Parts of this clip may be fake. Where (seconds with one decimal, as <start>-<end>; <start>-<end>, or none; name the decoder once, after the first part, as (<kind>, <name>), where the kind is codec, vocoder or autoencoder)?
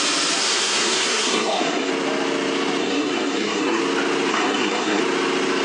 0.4-1.9 (codec, SNAC); 2.8-3.8; 4.3-5.0